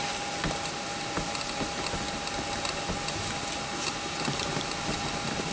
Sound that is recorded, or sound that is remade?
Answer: recorded